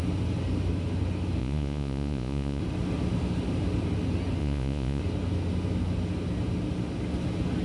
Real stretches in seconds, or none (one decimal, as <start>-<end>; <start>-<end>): 0.0-1.4; 2.6-4.4; 5.0-7.6